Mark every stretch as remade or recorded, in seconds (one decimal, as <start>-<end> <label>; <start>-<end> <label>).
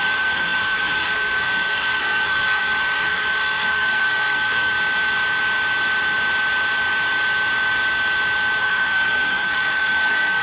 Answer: 0.0-4.7 remade; 4.7-8.6 recorded; 8.6-10.4 remade